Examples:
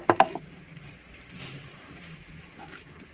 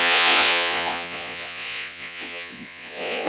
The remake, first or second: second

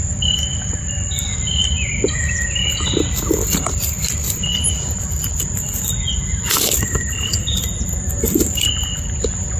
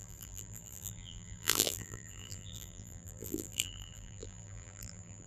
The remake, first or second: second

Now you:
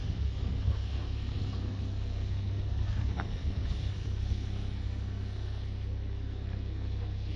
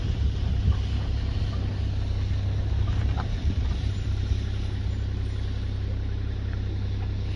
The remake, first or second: first